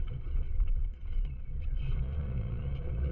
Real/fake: fake